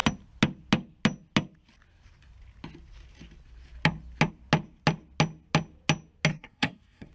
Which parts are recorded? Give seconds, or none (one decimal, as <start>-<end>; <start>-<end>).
0.0-6.3